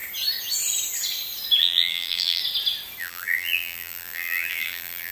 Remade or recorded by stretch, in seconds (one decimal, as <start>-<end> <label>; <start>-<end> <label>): 0.0-1.6 recorded; 1.6-2.4 remade; 2.4-3.0 recorded; 3.0-5.1 remade